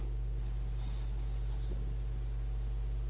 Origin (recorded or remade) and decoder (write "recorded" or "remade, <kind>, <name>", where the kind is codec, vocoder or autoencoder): recorded